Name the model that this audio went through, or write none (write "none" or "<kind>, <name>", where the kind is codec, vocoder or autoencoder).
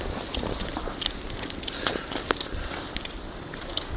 none